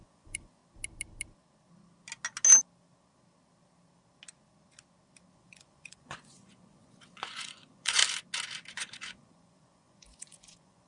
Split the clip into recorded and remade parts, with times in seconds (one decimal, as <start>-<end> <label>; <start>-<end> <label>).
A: 0.0-0.6 remade; 0.6-5.3 recorded; 5.3-8.0 remade; 8.0-8.7 recorded; 8.7-10.9 remade